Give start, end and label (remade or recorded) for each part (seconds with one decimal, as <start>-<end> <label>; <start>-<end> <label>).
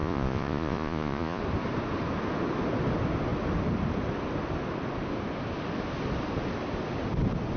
0.0-1.4 remade; 1.4-7.6 recorded